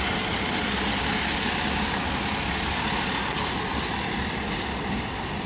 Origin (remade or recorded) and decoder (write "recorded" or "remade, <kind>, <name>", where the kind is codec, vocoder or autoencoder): recorded